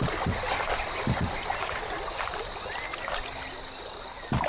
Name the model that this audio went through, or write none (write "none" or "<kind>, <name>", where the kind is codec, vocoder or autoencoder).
none